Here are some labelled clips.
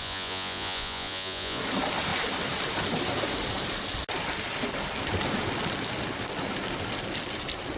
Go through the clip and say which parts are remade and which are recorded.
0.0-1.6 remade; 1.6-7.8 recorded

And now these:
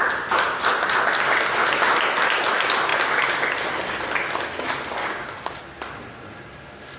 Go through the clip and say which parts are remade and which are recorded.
0.0-5.0 recorded; 5.0-5.6 remade; 5.6-7.0 recorded

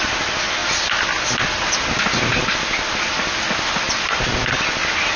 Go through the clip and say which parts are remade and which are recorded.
0.0-5.2 recorded